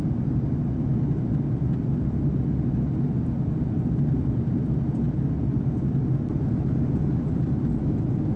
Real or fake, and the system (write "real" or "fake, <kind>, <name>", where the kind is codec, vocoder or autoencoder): real